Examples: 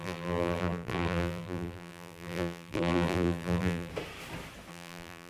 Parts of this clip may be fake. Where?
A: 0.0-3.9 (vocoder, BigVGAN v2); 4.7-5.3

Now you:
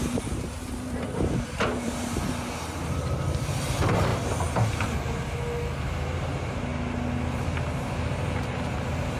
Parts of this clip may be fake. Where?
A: 0.0-4.1 (vocoder, BigVGAN v2); 5.8-6.7; 7.3-9.2

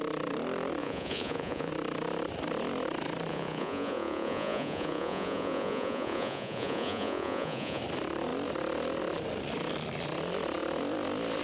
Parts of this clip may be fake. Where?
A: 0.8-1.7 (vocoder, Vocos); 3.3-7.8

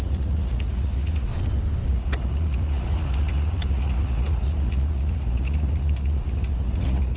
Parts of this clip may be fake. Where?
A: 0.0-1.3 (vocoder, Vocos); 1.9-7.2